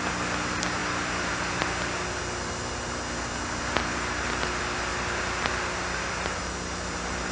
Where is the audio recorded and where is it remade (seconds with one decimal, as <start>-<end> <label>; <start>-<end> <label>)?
0.0-7.3 recorded